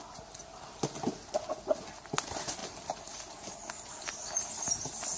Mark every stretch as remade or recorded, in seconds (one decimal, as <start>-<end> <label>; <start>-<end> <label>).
0.0-5.2 recorded